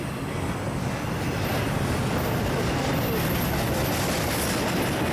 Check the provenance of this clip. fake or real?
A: real